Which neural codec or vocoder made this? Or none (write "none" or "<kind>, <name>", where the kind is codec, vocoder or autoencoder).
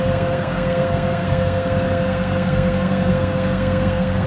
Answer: codec, SNAC